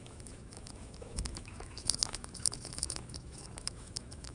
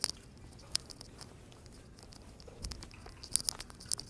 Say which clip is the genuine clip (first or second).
second